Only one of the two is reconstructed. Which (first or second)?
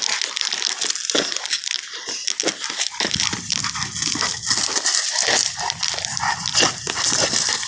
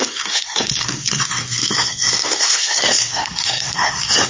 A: second